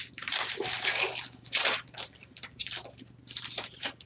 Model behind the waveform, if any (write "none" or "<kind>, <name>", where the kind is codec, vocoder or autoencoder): vocoder, BigVGAN v2